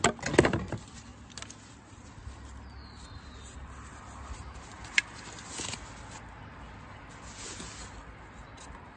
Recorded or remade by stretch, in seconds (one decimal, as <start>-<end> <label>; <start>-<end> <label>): 0.0-9.0 recorded